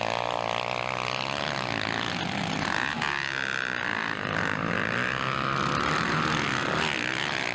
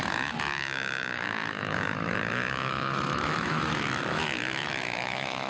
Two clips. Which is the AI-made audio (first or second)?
second